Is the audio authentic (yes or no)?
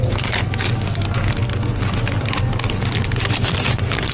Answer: yes